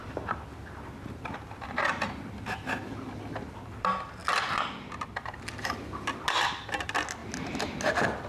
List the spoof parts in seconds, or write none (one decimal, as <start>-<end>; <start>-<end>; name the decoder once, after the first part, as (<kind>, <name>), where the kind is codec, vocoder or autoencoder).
none